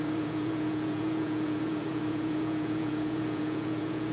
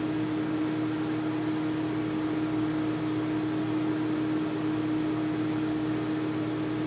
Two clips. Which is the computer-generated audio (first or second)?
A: first